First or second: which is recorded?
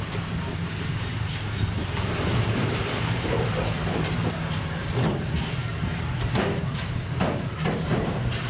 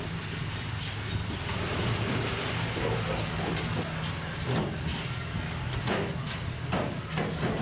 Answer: second